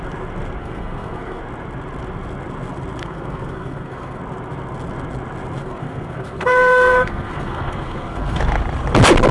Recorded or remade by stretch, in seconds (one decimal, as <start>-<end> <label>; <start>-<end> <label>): 0.0-0.6 recorded; 0.6-1.4 remade; 1.4-3.0 recorded; 3.0-4.2 remade; 4.2-5.6 recorded; 5.6-8.4 remade; 8.4-9.3 recorded